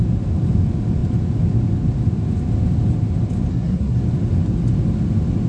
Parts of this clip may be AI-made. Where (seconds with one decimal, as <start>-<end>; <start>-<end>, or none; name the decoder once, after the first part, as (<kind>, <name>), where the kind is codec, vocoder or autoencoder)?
3.5-4.0 (codec, SNAC)